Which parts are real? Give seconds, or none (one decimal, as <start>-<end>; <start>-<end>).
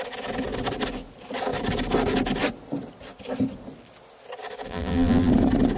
0.0-4.7; 5.3-5.8